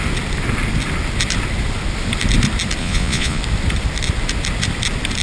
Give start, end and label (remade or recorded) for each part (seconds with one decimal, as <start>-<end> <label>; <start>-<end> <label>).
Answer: 0.0-2.8 recorded; 2.8-3.4 remade; 3.4-5.2 recorded